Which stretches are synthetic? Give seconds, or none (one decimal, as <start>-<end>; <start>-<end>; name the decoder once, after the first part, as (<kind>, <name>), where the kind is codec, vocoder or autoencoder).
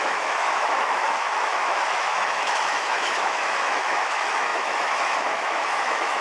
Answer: 0.0-6.2 (autoencoder, DAC-VAE)